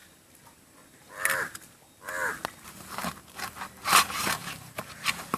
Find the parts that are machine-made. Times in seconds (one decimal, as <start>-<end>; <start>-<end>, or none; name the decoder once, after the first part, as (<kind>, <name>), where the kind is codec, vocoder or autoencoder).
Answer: 3.8-4.9 (vocoder, BigVGAN v2)